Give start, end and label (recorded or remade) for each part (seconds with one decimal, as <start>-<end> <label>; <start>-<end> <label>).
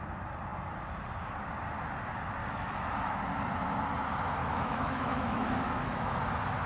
0.0-2.4 recorded; 2.4-3.2 remade; 3.2-4.4 recorded; 4.4-6.2 remade; 6.2-6.7 recorded